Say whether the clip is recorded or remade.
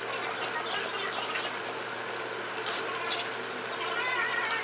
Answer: recorded